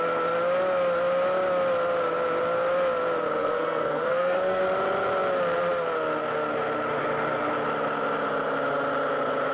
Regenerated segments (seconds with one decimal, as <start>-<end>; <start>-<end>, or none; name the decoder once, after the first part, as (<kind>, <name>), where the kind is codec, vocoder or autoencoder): 3.4-4.6 (codec, SNAC)